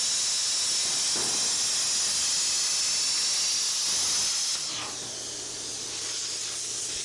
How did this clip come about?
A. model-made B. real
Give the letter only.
B